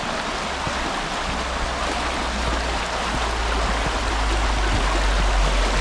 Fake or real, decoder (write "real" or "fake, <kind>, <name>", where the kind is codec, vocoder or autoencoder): real